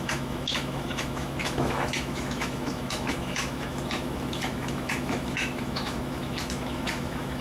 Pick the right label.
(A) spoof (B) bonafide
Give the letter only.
A